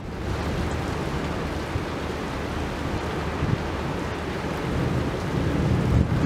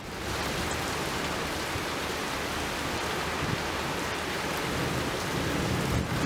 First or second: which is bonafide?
first